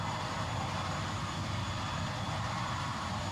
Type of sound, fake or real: real